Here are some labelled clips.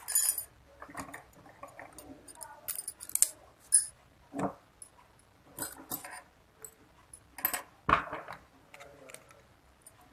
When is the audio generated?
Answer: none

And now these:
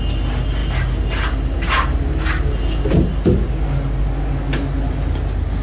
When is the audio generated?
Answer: none